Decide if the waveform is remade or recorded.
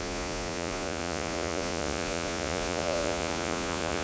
remade